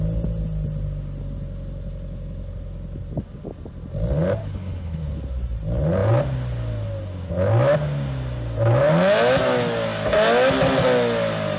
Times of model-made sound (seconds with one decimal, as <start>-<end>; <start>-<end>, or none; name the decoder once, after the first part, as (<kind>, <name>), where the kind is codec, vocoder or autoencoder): 4.4-5.0 (codec, HILCodec)